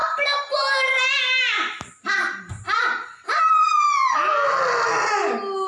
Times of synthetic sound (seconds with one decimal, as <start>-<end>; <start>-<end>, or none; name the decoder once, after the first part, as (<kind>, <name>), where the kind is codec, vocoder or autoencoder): none